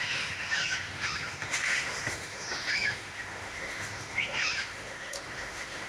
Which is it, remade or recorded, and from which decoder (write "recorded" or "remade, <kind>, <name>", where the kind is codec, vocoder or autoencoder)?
remade, autoencoder, DAC-VAE